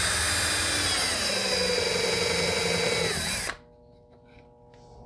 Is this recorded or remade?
recorded